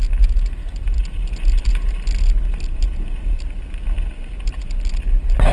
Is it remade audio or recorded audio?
recorded